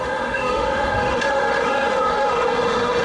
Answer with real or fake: fake